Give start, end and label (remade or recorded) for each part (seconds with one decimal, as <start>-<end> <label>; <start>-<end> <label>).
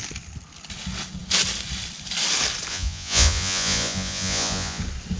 0.0-2.7 recorded; 2.7-4.8 remade; 4.8-5.2 recorded